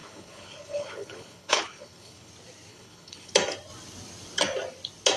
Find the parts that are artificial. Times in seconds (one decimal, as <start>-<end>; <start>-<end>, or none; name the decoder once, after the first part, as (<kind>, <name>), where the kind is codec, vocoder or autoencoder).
0.0-2.3 (codec, HILCodec); 2.7-3.3